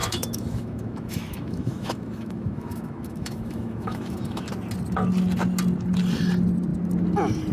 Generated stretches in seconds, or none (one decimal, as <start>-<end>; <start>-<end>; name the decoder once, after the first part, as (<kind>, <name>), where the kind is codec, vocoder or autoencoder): 0.0-4.5 (autoencoder, DAC-VAE)